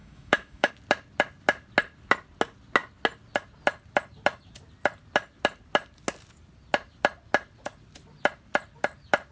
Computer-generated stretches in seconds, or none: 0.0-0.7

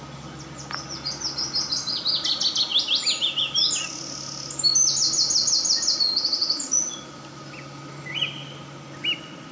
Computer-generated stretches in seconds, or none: none

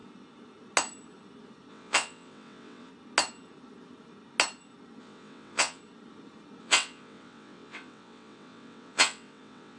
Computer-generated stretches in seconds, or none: 1.7-2.9; 5.0-5.8; 6.6-9.8

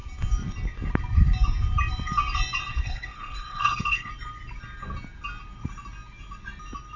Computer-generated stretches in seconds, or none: 2.7-4.1

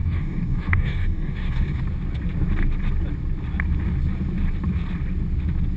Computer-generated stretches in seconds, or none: 0.0-1.8

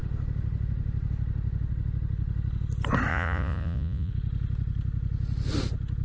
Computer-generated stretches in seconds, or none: 3.1-4.1